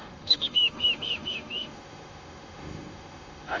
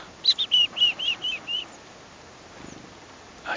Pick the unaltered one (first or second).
second